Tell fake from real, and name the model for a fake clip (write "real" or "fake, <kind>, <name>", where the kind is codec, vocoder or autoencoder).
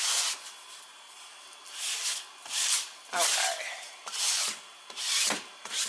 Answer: real